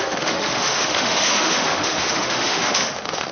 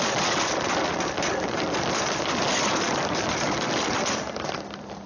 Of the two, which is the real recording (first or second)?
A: second